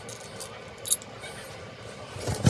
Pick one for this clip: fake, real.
real